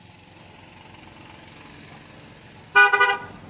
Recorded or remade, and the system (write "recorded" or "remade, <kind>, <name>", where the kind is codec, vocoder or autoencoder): recorded